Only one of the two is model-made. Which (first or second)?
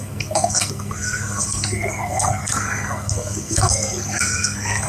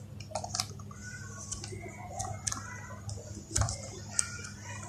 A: first